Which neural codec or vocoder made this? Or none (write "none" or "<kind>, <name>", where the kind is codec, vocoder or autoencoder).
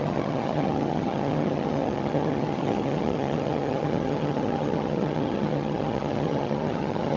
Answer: vocoder, HiFi-GAN